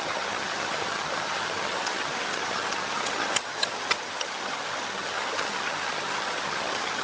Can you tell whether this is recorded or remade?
remade